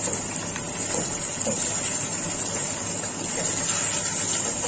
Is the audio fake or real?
real